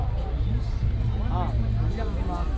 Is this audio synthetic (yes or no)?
no